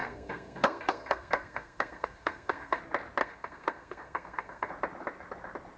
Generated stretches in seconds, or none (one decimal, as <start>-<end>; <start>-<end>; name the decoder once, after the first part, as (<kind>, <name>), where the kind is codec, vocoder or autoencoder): 0.0-2.8 (codec, SNAC); 3.2-4.7